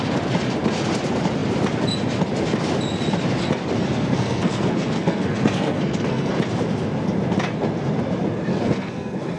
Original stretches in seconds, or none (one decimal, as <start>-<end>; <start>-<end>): 0.0-3.8; 6.3-8.5